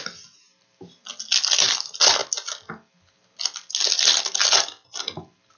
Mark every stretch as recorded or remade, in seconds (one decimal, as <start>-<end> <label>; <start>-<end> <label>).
0.0-5.6 recorded